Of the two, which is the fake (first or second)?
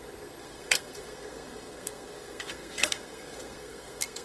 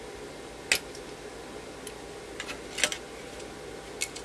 first